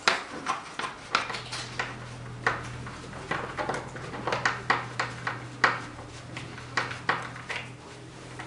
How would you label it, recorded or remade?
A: recorded